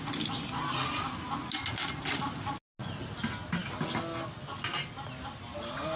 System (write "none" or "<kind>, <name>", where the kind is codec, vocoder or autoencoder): none